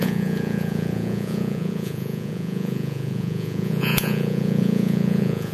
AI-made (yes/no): yes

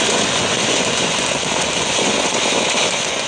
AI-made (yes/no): yes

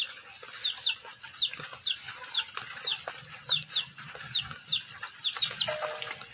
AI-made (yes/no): no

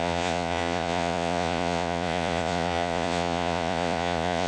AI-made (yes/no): yes